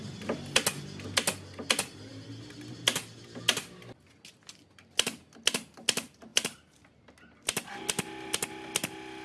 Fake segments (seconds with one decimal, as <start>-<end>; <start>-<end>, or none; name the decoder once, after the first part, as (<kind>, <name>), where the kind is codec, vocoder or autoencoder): 6.3-7.0 (vocoder, BigVGAN v2)